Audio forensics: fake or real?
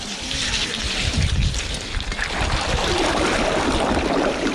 real